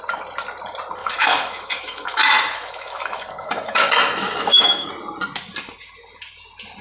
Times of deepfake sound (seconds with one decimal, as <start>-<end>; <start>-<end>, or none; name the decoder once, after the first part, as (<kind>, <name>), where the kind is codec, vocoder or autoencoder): 1.0-4.9 (autoencoder, DAC-VAE)